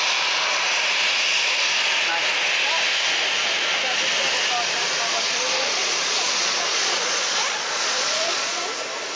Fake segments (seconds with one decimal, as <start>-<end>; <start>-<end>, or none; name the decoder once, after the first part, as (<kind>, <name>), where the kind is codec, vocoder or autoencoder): 5.8-8.6 (vocoder, Vocos)